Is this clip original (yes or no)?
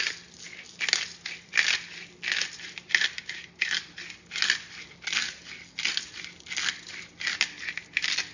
yes